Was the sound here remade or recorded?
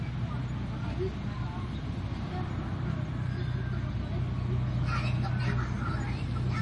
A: recorded